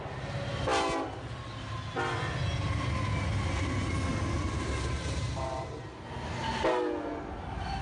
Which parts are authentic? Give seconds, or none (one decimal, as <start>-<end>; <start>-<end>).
0.0-4.1; 5.8-7.8